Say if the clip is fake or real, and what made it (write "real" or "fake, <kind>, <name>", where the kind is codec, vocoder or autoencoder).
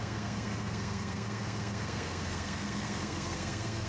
fake, codec, SNAC